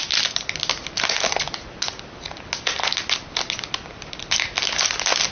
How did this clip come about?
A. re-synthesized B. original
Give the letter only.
B